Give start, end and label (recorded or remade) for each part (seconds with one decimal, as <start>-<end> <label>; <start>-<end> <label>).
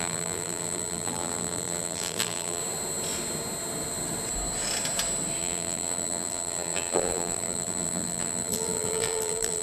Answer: 0.0-2.6 remade; 2.6-5.4 recorded; 5.4-9.6 remade